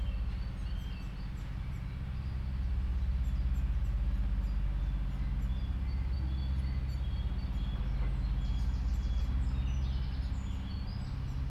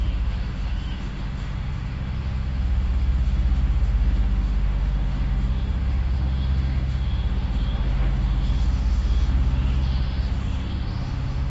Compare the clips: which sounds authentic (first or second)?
first